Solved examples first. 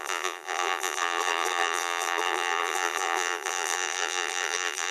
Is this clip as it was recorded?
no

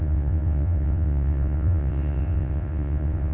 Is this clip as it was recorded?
no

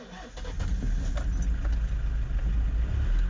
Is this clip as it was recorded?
yes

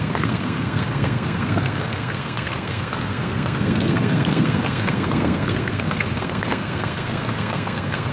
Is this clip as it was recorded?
no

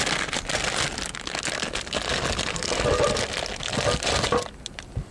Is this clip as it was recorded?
yes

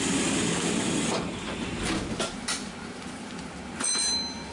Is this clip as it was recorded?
yes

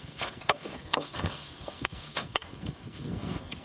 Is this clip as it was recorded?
no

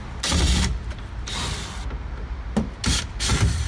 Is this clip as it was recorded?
yes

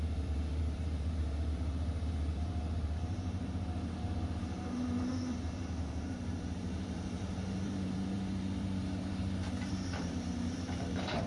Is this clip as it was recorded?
no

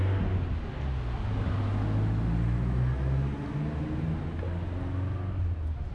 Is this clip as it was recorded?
yes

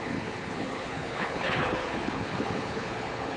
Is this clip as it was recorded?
no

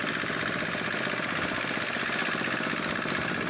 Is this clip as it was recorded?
yes